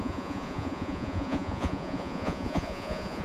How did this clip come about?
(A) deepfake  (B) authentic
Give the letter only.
A